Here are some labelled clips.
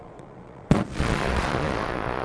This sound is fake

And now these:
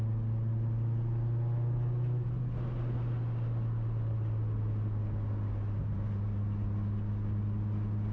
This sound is real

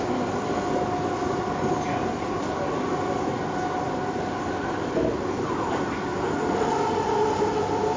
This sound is real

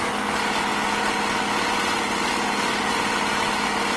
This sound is real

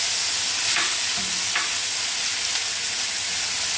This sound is real